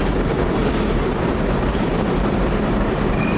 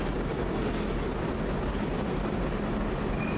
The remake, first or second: first